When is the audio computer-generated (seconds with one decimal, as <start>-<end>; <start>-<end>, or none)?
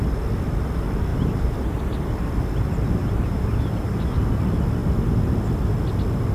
1.1-1.8; 3.0-4.2